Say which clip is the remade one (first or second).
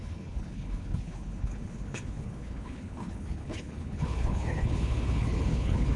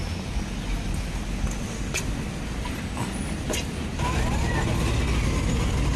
first